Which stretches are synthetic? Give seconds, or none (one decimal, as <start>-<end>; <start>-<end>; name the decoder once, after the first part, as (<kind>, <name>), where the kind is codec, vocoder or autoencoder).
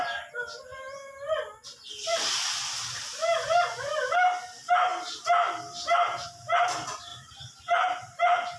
7.1-8.6 (vocoder, BigVGAN v2)